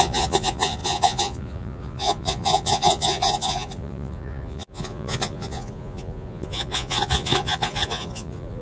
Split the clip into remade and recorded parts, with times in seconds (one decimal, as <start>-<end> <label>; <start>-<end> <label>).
0.0-8.6 remade